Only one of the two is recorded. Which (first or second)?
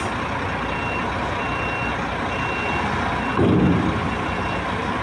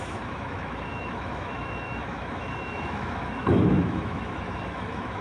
first